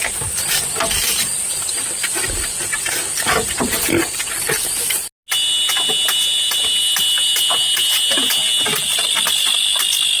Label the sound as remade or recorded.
recorded